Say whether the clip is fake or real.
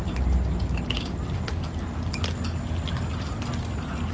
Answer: real